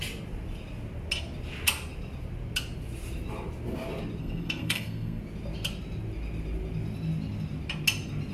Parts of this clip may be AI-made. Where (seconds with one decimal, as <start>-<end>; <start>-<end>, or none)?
4.2-5.2